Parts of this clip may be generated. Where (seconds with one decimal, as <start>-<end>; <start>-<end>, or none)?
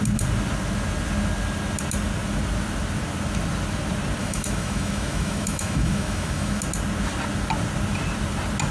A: 4.2-6.6